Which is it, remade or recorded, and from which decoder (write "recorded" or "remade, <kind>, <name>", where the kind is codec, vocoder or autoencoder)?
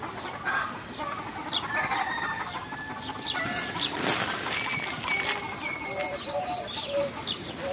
recorded